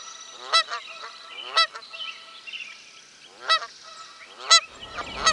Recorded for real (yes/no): yes